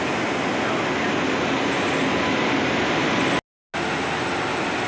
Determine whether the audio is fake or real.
real